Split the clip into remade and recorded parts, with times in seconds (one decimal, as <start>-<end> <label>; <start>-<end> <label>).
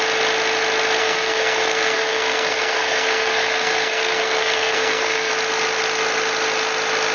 0.0-1.0 recorded; 1.0-5.3 remade; 5.3-7.1 recorded